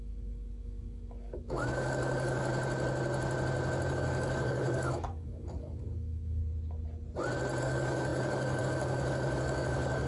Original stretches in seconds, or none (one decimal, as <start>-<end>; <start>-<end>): 2.5-3.9; 6.4-7.6